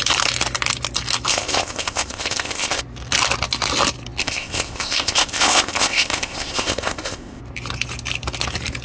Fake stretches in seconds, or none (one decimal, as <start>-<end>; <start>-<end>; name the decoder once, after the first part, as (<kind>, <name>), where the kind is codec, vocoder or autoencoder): 1.3-2.8 (codec, ZipCodec); 4.2-7.4